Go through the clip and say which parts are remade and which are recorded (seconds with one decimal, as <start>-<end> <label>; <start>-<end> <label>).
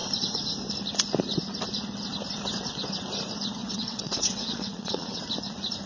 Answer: 0.0-3.6 recorded; 3.6-5.2 remade; 5.2-5.9 recorded